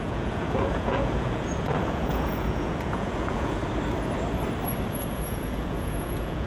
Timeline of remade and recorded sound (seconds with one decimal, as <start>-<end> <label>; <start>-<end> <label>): 0.0-3.6 remade; 3.6-4.9 recorded; 4.9-6.5 remade